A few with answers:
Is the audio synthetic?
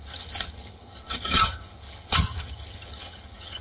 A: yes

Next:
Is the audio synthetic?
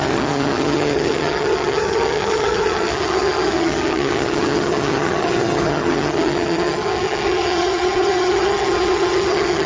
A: yes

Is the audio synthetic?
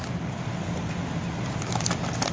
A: no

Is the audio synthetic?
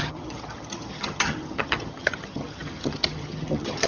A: yes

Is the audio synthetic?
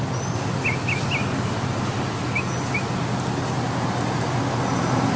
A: no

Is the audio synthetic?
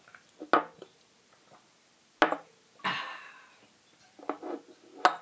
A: no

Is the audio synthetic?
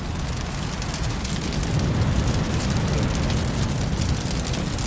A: no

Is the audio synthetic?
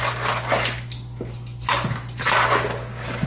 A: no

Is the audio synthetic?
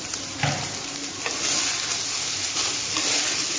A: no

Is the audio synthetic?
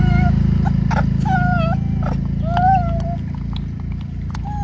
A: no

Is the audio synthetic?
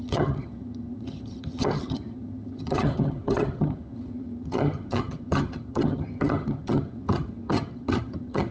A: yes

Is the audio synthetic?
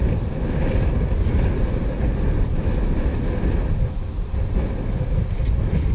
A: no